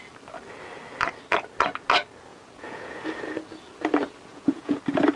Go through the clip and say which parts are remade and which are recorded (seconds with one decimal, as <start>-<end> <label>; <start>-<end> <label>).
0.0-2.3 recorded; 2.3-3.0 remade; 3.0-4.3 recorded; 4.3-4.8 remade; 4.8-5.2 recorded

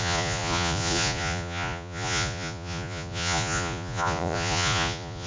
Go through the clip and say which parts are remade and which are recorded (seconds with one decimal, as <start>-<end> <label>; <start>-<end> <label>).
0.0-5.3 remade

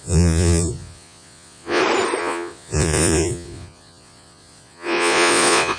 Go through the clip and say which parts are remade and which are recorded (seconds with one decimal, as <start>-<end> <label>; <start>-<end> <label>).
0.0-1.8 remade; 1.8-2.2 recorded; 2.2-5.8 remade